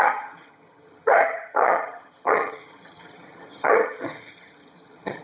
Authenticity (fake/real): fake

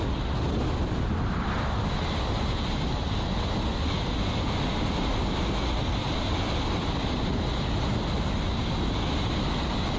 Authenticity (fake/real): real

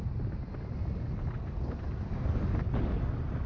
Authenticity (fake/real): real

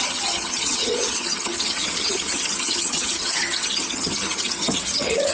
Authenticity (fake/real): fake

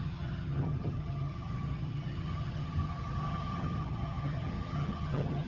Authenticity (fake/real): fake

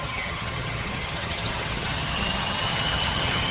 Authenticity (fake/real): fake